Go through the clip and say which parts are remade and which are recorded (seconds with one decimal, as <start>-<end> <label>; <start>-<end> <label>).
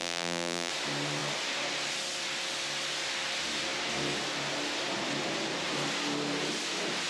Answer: 0.0-0.7 remade; 0.7-7.1 recorded